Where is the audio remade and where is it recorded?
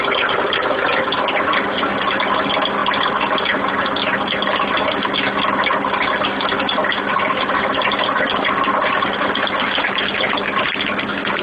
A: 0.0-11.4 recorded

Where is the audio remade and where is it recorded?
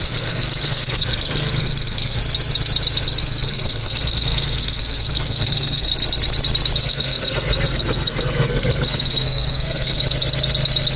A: 0.0-2.2 remade; 2.2-3.2 recorded; 3.2-5.9 remade; 5.9-6.8 recorded; 6.8-10.0 remade; 10.0-11.0 recorded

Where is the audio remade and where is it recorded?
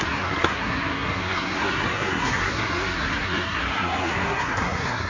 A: 0.0-5.1 remade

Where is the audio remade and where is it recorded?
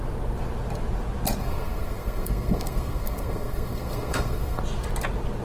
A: 0.0-1.4 recorded; 1.4-4.6 remade; 4.6-5.4 recorded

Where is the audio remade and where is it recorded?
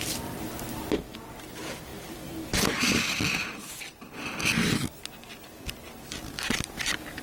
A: 0.0-7.2 recorded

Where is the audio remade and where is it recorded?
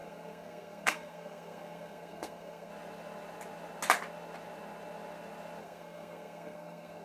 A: 0.0-2.7 remade; 2.7-5.6 recorded; 5.6-7.0 remade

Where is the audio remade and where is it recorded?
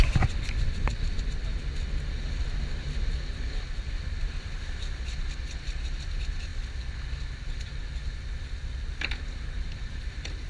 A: 0.0-10.5 recorded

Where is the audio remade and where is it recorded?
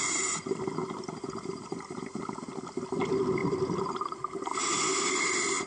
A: 0.0-5.7 recorded